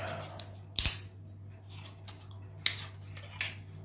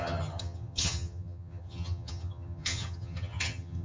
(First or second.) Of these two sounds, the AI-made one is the second